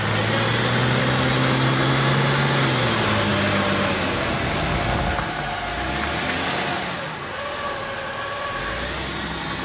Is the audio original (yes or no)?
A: yes